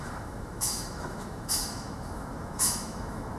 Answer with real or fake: fake